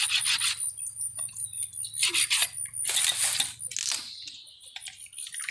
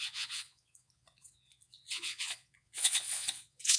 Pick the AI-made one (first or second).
second